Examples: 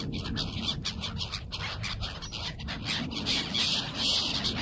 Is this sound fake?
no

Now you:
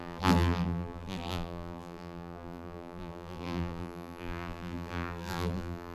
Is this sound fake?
yes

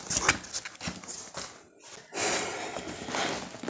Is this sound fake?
no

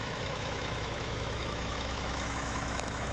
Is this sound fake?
yes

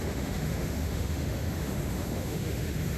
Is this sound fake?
yes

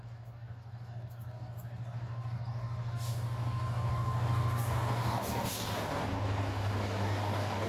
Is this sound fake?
yes